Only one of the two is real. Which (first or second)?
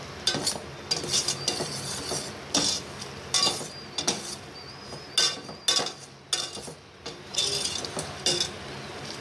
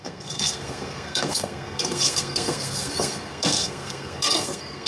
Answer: first